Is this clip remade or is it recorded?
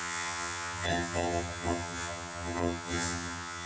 remade